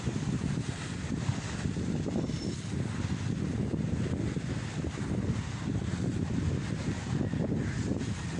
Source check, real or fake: real